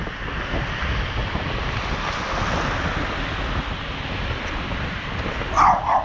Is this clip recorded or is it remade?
recorded